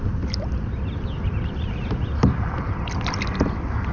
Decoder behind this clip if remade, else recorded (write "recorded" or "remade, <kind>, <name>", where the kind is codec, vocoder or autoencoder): recorded